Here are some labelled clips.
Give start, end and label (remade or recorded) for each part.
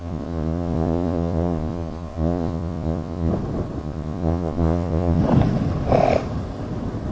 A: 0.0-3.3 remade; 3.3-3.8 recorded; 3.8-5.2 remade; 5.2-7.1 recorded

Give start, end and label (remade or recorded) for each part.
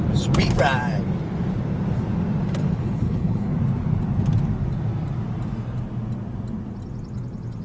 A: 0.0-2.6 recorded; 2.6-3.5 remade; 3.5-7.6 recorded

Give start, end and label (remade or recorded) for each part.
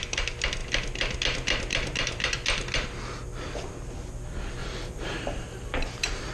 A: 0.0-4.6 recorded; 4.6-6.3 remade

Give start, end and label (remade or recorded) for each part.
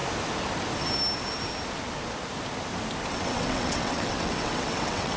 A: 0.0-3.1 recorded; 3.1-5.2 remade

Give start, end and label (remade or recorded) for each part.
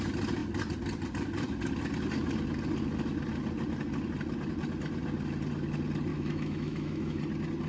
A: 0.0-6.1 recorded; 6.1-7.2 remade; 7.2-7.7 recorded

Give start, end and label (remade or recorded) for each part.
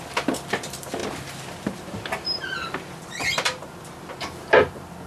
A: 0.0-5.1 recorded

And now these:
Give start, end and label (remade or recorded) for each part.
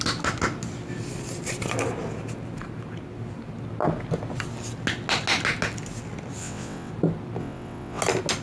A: 0.0-6.4 recorded; 6.4-6.9 remade; 6.9-7.4 recorded; 7.4-8.0 remade; 8.0-8.4 recorded